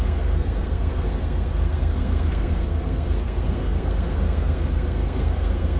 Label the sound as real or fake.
fake